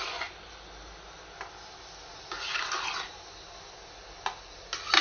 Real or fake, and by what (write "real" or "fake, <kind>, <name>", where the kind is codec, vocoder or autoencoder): real